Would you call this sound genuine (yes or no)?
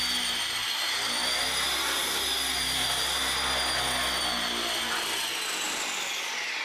yes